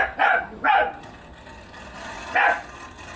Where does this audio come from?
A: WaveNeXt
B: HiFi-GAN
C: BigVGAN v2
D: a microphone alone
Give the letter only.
D